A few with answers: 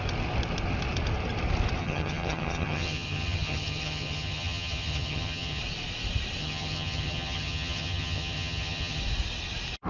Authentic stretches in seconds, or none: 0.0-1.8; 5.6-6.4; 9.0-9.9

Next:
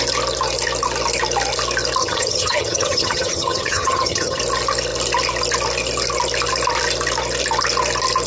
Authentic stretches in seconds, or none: 0.0-2.0; 4.4-8.3

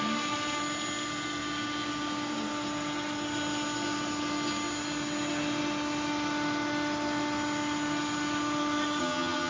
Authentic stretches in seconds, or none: 0.0-9.0